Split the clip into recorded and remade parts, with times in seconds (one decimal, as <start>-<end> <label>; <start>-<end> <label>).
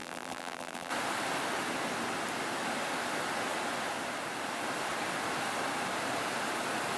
0.0-0.9 remade; 0.9-7.0 recorded